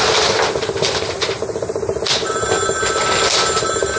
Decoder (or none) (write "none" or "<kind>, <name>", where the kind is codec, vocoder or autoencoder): none